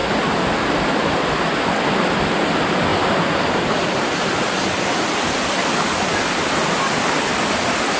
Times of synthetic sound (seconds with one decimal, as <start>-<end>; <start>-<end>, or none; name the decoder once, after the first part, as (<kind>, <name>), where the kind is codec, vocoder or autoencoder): none